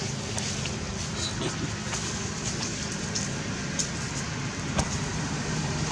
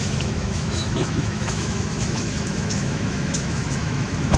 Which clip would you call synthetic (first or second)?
second